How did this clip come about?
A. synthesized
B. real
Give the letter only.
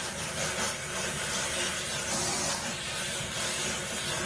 A